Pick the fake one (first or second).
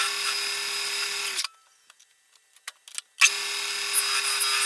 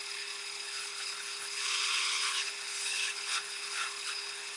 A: second